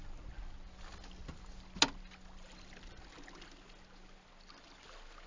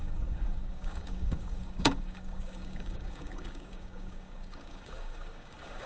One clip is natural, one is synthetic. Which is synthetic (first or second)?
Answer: second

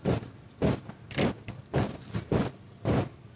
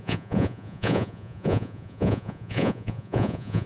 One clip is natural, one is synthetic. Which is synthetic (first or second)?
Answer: second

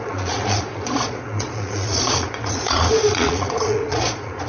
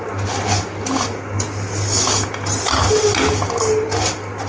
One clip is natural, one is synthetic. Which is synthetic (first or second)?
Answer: first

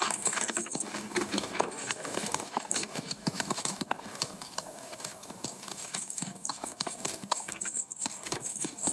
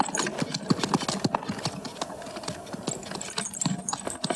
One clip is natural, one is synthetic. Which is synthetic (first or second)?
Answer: first